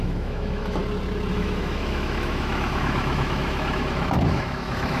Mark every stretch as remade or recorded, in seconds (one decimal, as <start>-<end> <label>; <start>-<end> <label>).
0.0-0.8 remade; 0.8-1.3 recorded; 1.3-5.0 remade